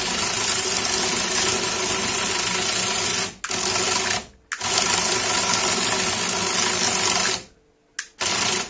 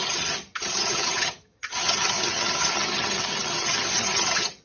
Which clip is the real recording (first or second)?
first